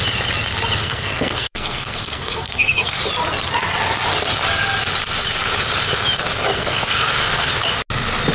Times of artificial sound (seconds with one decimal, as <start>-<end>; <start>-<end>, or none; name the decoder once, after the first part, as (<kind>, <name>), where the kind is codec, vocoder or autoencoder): 0.8-3.0 (codec, SNAC); 6.5-7.5